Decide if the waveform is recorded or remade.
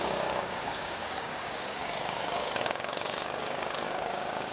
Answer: remade